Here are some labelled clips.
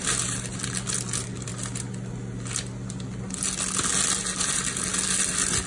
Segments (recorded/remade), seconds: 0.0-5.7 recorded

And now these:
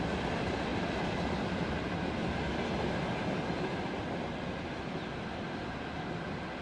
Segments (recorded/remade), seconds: 0.0-6.6 recorded

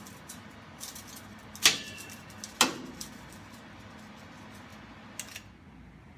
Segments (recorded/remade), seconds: 0.0-6.2 recorded

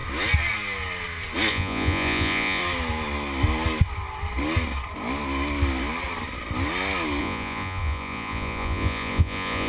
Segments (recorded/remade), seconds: 0.0-1.5 recorded; 1.5-2.6 remade; 2.6-7.2 recorded; 7.2-9.7 remade